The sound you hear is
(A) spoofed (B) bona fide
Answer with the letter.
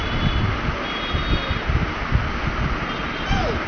B